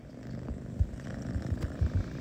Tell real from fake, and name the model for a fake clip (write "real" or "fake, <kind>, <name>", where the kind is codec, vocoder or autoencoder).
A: real